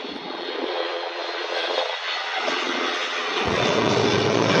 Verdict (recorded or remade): remade